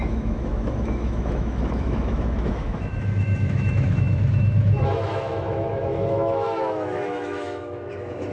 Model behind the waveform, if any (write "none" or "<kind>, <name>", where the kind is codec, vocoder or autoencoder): autoencoder, DAC-VAE